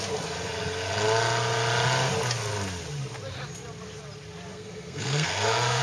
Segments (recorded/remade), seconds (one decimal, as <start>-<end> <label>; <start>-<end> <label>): 0.0-4.5 recorded; 4.5-5.8 remade